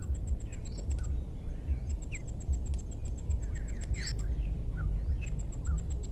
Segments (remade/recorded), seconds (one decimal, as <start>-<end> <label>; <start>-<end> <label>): 0.0-3.0 recorded; 3.0-4.1 remade; 4.1-6.1 recorded